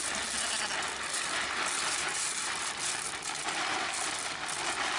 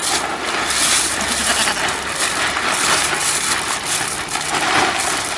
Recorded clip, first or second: first